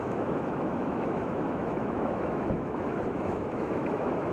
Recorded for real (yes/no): no